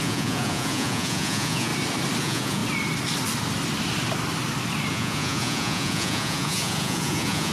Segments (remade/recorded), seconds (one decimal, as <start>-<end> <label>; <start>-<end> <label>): 0.0-1.7 remade; 1.7-2.2 recorded; 2.2-2.6 remade; 2.6-4.9 recorded; 4.9-7.5 remade